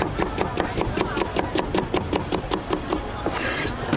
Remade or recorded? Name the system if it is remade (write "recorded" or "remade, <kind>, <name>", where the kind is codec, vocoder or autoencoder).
recorded